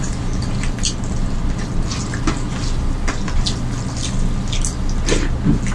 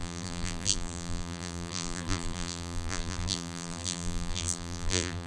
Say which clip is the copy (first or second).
second